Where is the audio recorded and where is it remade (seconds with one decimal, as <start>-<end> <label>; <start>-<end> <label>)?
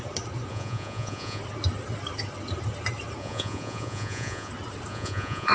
0.0-0.5 recorded; 0.5-1.4 remade; 1.4-3.2 recorded; 3.2-4.5 remade; 4.5-4.9 recorded; 4.9-5.5 remade